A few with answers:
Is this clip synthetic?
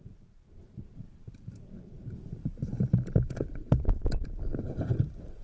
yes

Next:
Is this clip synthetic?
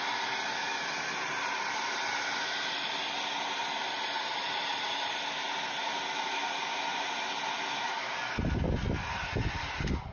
no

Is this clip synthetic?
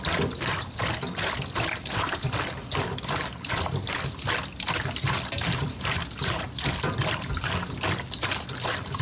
yes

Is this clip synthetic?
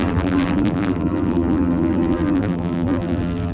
yes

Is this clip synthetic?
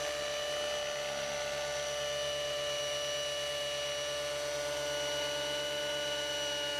no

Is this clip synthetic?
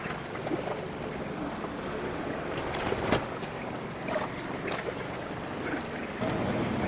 yes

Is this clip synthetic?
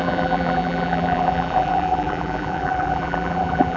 yes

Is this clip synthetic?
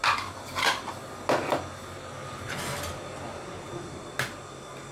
no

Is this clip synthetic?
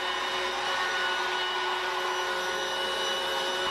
no